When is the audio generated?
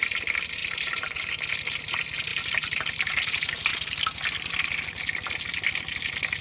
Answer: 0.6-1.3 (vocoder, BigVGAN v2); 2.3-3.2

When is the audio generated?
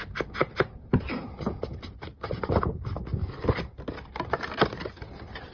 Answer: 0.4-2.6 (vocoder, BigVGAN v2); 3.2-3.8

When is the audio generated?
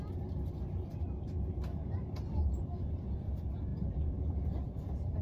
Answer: 3.7-5.2 (vocoder, BigVGAN v2)